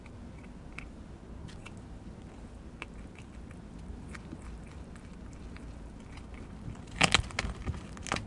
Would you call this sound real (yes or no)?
yes